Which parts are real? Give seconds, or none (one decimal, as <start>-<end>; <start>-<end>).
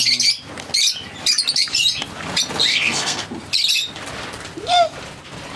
0.0-2.7; 3.2-5.6